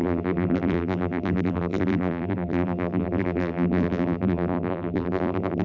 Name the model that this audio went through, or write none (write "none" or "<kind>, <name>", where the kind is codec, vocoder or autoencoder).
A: vocoder, BigVGAN v2